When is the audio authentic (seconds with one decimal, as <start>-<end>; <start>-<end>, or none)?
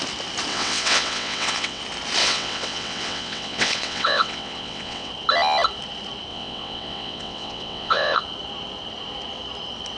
0.0-0.5; 1.8-2.2; 5.1-6.3; 8.2-10.0